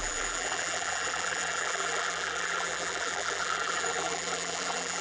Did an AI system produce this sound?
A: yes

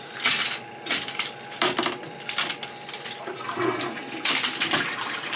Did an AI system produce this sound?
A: no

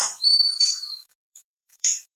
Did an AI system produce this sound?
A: yes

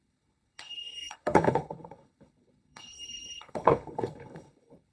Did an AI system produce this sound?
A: yes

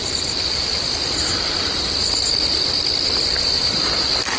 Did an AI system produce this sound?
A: no